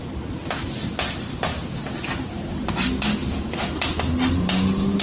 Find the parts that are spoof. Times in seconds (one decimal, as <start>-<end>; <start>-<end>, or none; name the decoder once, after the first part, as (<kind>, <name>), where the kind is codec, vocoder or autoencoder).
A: none